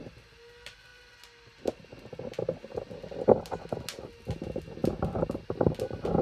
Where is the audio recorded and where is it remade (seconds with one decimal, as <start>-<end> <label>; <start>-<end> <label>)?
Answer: 0.0-6.2 recorded